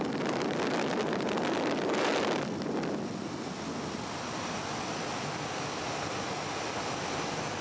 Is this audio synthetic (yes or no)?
no